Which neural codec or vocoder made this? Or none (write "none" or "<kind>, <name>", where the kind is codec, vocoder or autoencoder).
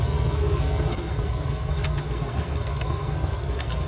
codec, SNAC